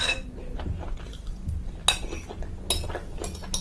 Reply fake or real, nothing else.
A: real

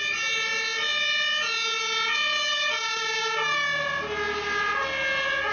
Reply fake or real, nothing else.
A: real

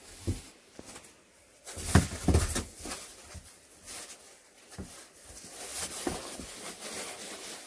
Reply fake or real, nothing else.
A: real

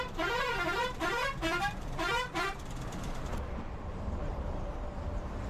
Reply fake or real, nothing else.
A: fake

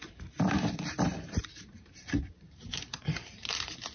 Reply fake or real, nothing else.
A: fake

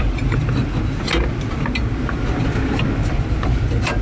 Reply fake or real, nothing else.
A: real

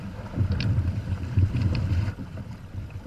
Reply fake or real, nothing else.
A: fake